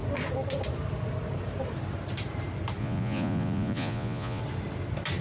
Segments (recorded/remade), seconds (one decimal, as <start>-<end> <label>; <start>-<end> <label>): 0.0-2.8 recorded; 2.8-4.4 remade; 4.4-5.2 recorded

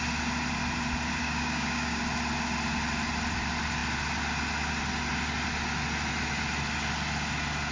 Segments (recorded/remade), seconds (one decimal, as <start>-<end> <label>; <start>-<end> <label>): 0.0-1.2 recorded; 1.2-2.0 remade; 2.0-7.7 recorded

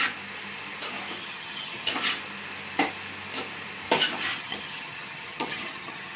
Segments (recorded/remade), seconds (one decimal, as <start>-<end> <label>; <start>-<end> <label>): 0.0-1.2 recorded; 1.2-1.9 remade; 1.9-4.3 recorded; 4.3-6.2 remade